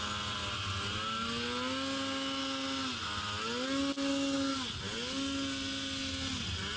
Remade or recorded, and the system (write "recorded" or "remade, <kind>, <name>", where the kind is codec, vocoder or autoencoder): recorded